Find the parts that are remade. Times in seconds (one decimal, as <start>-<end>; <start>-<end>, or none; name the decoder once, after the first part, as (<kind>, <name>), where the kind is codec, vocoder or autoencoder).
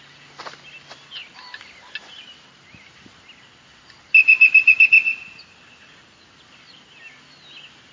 none